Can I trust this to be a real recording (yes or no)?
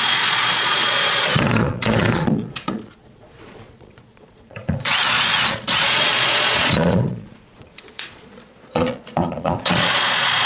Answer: no